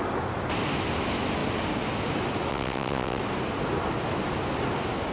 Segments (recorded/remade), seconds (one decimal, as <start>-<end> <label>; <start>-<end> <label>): 0.0-2.5 recorded; 2.5-3.2 remade; 3.2-5.1 recorded